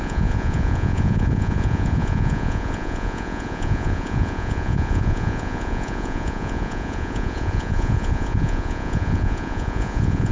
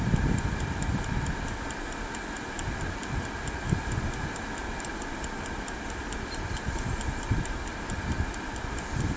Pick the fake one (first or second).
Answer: first